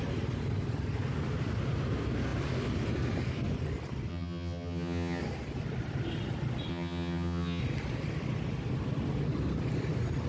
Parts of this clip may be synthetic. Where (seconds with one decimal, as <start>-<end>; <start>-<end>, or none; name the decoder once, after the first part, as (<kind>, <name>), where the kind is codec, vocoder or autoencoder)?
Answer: 4.1-5.2 (vocoder, HiFi-GAN); 6.7-7.6